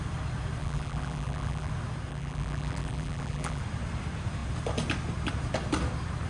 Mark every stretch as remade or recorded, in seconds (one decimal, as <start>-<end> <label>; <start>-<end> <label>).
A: 0.0-0.6 recorded; 0.6-1.7 remade; 1.7-2.1 recorded; 2.1-3.6 remade; 3.6-6.3 recorded